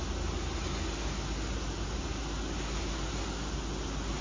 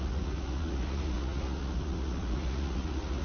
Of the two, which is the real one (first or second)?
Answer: first